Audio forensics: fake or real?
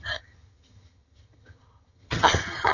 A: fake